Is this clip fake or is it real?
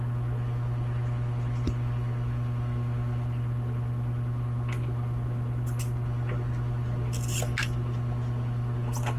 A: real